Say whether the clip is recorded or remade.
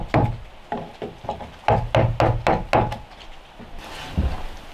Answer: recorded